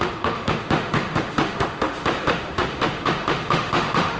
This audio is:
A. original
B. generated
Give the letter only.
B